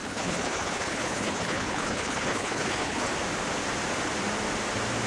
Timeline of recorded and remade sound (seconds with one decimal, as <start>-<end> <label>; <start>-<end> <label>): 0.0-3.1 remade; 3.1-5.1 recorded